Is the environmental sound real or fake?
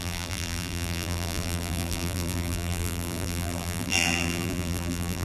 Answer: fake